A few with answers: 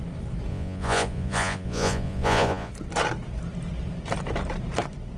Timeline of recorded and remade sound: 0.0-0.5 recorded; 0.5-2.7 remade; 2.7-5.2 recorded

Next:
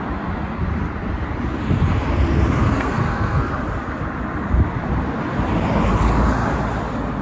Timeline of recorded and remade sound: 0.0-2.6 recorded; 2.6-3.5 remade; 3.5-7.2 recorded

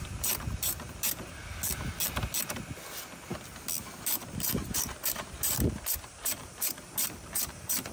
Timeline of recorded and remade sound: 0.0-1.4 remade; 1.4-4.0 recorded; 4.0-7.9 remade

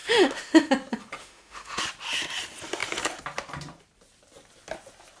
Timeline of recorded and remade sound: 0.0-0.7 remade; 0.7-1.2 recorded; 1.2-1.8 remade; 1.8-5.2 recorded

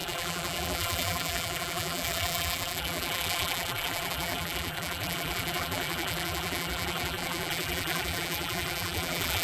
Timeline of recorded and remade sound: 0.0-9.4 remade

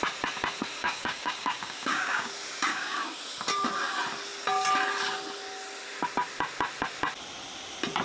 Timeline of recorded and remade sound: 0.0-0.8 recorded; 0.8-2.3 remade; 2.3-2.7 recorded; 2.7-3.2 remade; 3.2-8.0 recorded